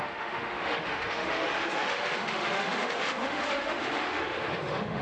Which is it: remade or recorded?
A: remade